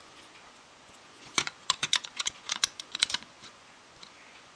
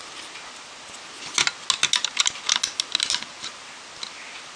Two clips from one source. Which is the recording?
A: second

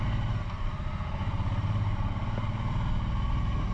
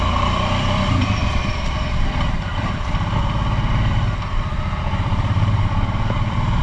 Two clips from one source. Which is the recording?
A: first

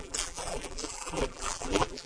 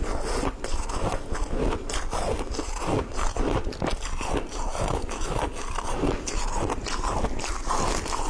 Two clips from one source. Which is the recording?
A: second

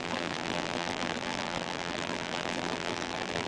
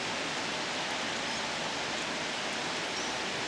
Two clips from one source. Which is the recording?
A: second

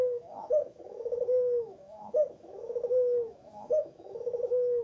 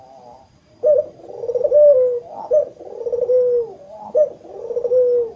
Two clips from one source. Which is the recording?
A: second